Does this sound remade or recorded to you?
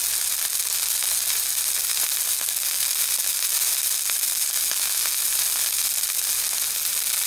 recorded